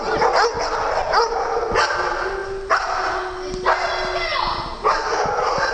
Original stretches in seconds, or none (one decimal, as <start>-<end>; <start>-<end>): 0.0-5.7